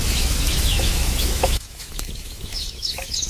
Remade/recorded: remade